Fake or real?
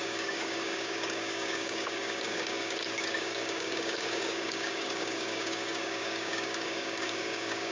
fake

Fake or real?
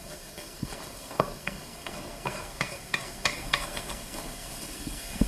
fake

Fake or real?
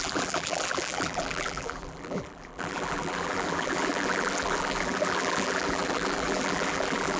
fake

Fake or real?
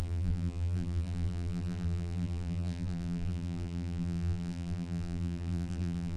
fake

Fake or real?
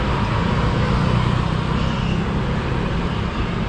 real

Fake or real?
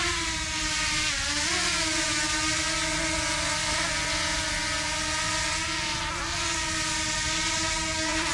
real